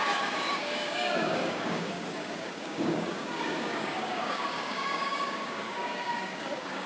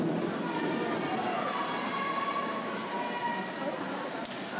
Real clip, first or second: second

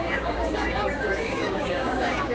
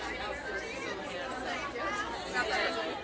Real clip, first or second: second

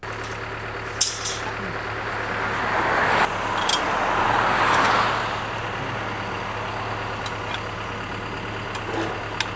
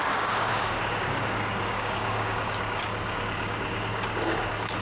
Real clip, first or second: first